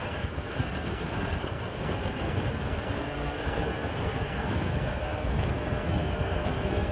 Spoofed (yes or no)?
yes